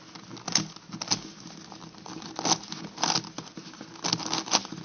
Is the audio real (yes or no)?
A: yes